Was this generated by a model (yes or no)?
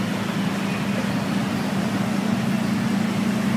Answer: no